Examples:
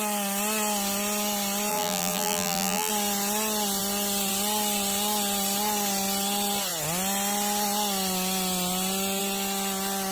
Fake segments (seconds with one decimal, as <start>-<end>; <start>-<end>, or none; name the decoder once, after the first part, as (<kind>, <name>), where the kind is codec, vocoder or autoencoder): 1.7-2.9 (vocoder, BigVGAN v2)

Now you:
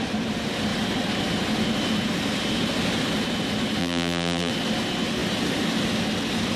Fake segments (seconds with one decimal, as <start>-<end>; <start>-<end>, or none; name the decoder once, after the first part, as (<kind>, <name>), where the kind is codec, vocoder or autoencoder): 3.8-4.5 (vocoder, BigVGAN v2)

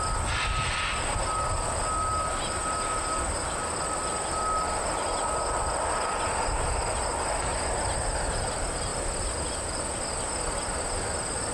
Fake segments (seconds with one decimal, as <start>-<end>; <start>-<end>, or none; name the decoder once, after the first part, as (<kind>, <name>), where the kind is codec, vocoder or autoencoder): none